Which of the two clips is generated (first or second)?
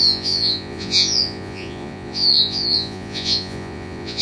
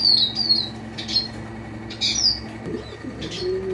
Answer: first